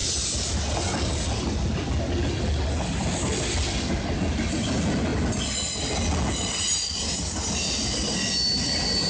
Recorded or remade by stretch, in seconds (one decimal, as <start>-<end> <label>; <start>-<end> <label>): 0.0-9.1 recorded